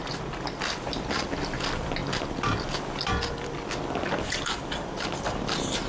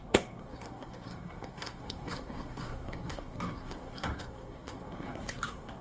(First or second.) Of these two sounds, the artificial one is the second